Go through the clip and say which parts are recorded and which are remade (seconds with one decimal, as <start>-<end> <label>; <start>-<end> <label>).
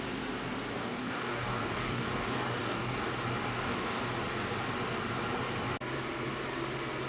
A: 0.0-0.7 recorded; 0.7-3.1 remade; 3.1-3.5 recorded; 3.5-4.0 remade; 4.0-7.1 recorded